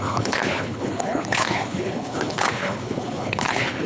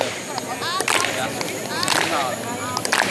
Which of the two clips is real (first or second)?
second